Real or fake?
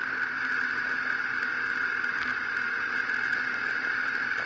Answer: real